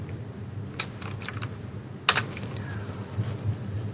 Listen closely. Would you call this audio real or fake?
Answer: real